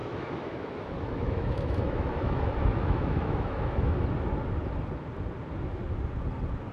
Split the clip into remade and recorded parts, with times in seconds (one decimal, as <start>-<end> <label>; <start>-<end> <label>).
0.0-4.0 remade; 4.0-6.7 recorded